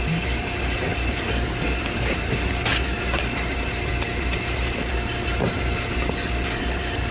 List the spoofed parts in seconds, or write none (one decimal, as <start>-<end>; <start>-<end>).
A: none